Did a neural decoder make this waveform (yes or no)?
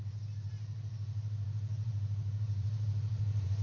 yes